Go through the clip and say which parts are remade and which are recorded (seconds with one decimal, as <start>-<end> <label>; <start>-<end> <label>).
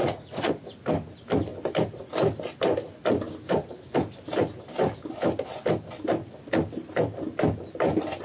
0.0-0.5 remade; 0.5-8.2 recorded